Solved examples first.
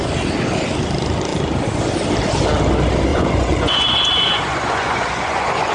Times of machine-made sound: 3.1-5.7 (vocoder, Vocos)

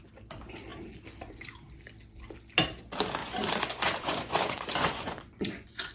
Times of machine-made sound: 3.2-5.9 (vocoder, Vocos)

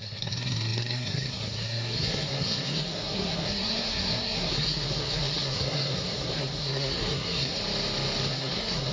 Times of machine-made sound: 0.0-7.6 (codec, SNAC); 8.3-8.9

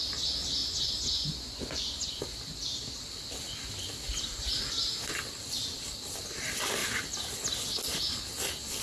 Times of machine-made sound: 0.6-2.2 (vocoder, Vocos)

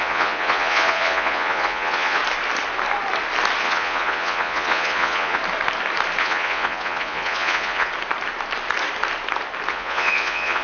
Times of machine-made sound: 0.0-2.2 (vocoder, Vocos); 3.6-5.4; 6.2-7.9; 9.7-10.6

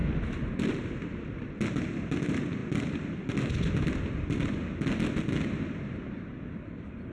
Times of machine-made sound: none

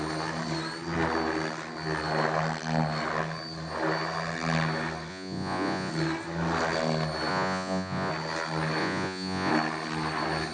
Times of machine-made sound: 5.1-5.9 (vocoder, Vocos); 7.3-8.1; 8.8-9.5